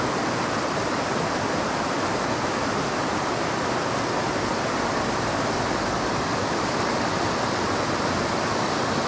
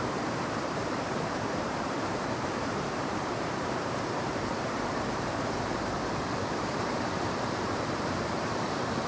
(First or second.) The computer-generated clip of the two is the second